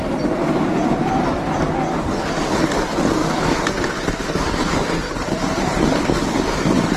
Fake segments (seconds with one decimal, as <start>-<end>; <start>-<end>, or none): none